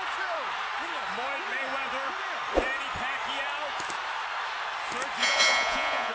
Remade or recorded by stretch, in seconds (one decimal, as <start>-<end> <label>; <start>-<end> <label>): 0.0-5.2 recorded; 5.2-6.1 remade